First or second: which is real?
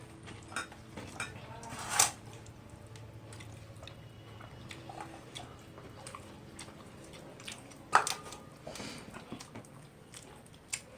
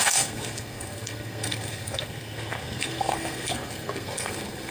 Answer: first